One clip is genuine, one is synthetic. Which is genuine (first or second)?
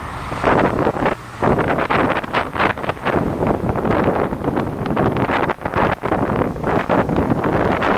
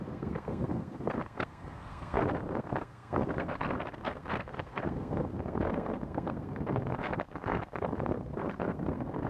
first